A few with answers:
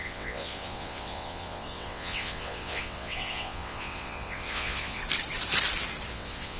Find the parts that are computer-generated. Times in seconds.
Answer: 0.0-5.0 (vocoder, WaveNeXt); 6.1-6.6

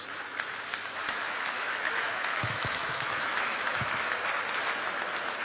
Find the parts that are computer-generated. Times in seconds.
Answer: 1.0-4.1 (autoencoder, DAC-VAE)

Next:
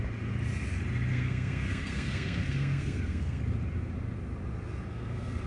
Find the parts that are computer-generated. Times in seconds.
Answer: 1.1-3.4 (codec, SNAC); 4.9-5.5

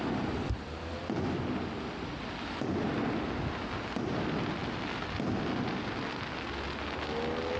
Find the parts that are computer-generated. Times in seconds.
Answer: none